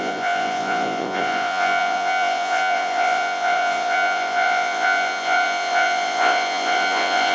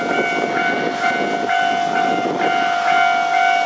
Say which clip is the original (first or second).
second